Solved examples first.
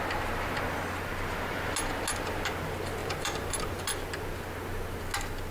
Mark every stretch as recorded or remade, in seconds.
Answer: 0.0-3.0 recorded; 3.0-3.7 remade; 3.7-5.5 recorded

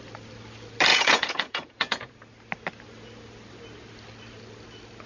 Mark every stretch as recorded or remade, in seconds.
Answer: 0.0-0.9 recorded; 0.9-2.1 remade; 2.1-5.1 recorded

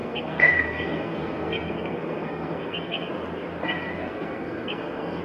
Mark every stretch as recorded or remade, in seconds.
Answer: 0.0-3.1 remade; 3.1-3.6 recorded; 3.6-5.2 remade

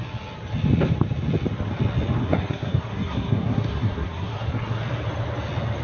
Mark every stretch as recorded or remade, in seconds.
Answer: 0.0-2.2 recorded; 2.2-4.8 remade; 4.8-5.8 recorded

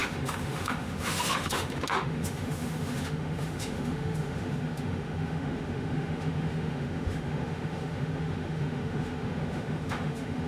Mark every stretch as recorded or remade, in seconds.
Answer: 0.0-10.5 remade

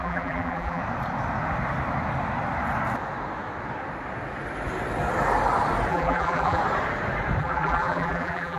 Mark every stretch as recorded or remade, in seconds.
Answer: 0.0-0.8 remade; 0.8-5.9 recorded; 5.9-6.6 remade; 6.6-7.4 recorded; 7.4-8.6 remade